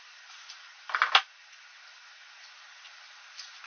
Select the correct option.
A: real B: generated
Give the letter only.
A